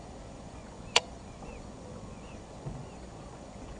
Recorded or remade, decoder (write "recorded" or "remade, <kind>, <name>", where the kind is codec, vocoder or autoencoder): remade, vocoder, Vocos